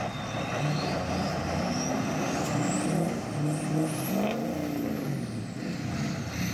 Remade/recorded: recorded